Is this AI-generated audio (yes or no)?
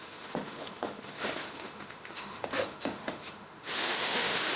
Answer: yes